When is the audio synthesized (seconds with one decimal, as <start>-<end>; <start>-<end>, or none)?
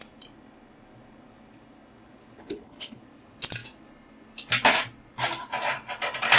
2.4-3.0